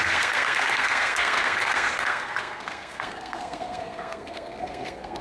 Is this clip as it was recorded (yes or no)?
no